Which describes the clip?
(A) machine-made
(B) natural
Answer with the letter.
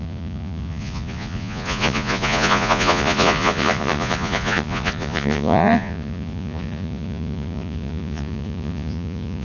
A